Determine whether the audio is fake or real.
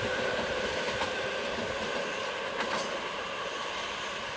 real